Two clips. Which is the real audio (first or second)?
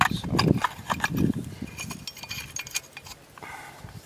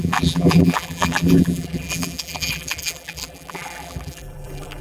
first